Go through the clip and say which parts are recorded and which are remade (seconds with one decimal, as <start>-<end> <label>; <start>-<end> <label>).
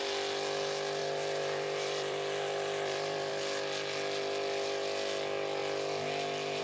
0.0-1.0 recorded; 1.0-3.3 remade; 3.3-6.6 recorded